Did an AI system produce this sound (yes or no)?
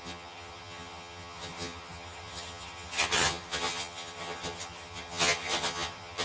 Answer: yes